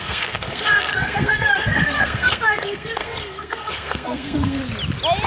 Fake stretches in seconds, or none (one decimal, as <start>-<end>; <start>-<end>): 0.0-4.6